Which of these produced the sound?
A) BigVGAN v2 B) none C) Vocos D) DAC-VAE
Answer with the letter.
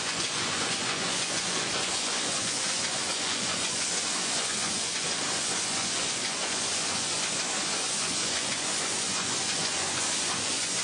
C